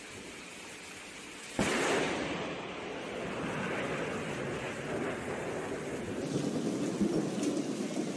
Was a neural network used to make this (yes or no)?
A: no